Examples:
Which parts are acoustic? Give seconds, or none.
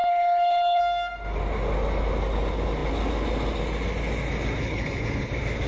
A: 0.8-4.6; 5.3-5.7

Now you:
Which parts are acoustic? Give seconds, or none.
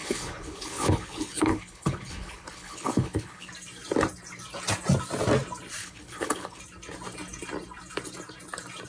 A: 3.5-5.8; 6.6-8.9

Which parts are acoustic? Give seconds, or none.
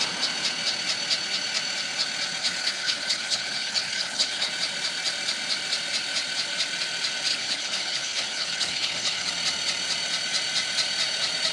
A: 0.0-2.4; 4.5-7.3; 9.3-11.5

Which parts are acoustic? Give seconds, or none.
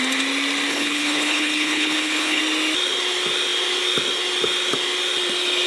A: 0.0-0.7; 2.4-5.7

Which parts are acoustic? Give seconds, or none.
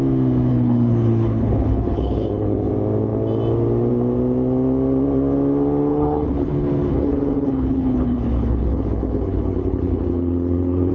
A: 0.0-0.5; 2.7-5.9